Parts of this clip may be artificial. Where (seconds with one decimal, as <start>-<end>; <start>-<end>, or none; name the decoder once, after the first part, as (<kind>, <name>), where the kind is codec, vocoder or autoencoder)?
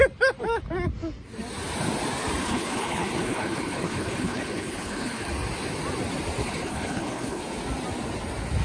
2.4-5.3 (codec, HILCodec); 6.4-7.4